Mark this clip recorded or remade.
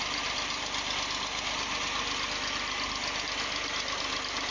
recorded